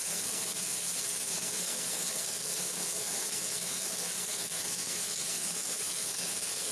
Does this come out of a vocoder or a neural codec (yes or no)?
yes